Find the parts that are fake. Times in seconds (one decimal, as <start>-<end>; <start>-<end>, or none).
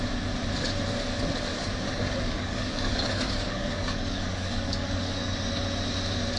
1.5-5.3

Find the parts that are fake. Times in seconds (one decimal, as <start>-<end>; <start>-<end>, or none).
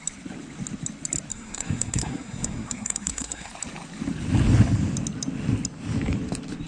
1.3-3.5